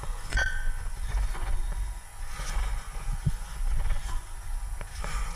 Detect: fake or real fake